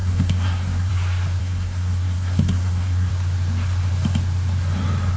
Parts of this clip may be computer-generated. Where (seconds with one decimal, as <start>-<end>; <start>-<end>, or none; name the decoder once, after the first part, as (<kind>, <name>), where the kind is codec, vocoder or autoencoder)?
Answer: 0.0-0.9 (codec, SNAC); 1.4-3.1

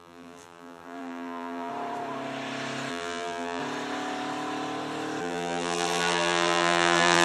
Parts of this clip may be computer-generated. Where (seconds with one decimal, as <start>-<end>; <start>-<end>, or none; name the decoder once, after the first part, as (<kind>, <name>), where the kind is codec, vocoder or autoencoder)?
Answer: 0.0-1.7 (vocoder, BigVGAN v2); 2.9-3.6; 5.2-7.2

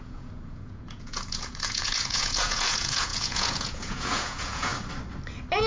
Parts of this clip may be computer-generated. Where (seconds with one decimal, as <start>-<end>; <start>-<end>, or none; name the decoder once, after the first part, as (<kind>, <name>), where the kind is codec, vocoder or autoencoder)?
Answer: 0.0-4.7 (vocoder, Vocos)